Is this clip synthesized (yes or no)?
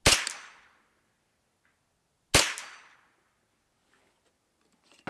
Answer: no